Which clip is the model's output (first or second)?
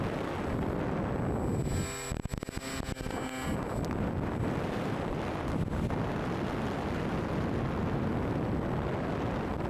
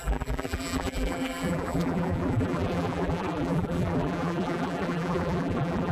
second